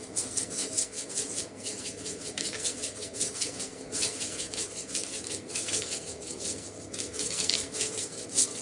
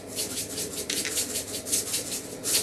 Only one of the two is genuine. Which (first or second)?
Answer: second